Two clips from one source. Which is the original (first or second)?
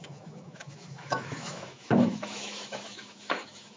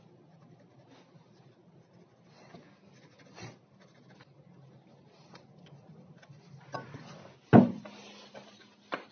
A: second